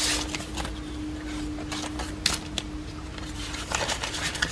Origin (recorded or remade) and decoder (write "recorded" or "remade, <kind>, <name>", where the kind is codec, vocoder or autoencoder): recorded